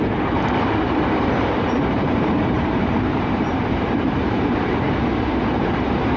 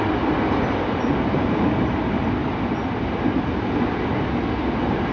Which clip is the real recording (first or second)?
second